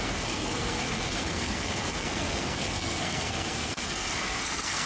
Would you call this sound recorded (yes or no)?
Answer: no